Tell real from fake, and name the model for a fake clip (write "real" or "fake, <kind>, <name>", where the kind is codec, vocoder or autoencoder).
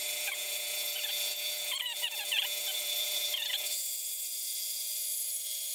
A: fake, vocoder, Vocos